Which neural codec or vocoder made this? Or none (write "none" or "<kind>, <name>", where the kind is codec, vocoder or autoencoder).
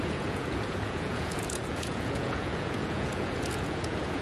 vocoder, Vocos